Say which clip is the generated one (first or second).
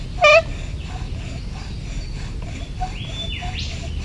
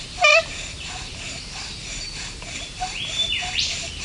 second